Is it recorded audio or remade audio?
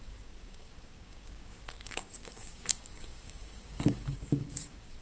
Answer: remade